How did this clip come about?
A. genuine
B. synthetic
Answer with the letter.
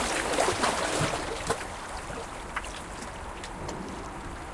A